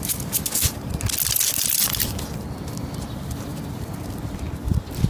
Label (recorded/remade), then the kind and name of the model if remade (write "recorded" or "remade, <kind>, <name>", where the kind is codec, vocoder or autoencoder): recorded